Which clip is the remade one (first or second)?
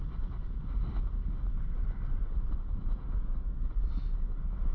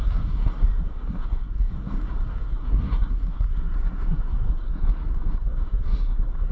second